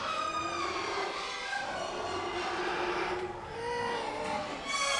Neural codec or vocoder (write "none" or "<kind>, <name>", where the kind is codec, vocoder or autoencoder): none